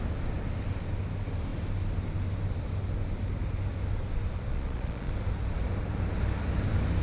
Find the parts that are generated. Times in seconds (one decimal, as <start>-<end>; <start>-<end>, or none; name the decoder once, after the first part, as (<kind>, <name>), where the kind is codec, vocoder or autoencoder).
4.5-5.1 (vocoder, Vocos)